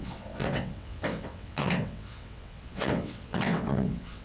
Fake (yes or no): yes